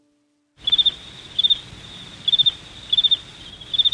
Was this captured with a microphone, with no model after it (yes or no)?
yes